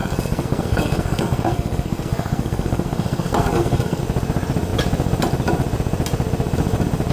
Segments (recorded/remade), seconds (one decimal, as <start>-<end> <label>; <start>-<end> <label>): 0.0-4.0 remade; 4.0-7.1 recorded